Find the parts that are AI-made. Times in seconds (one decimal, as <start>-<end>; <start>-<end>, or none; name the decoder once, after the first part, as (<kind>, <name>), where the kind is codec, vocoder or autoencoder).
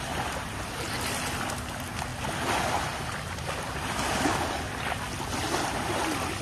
none